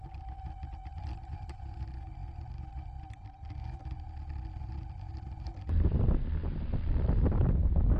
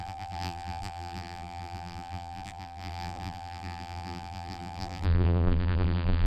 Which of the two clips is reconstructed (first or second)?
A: second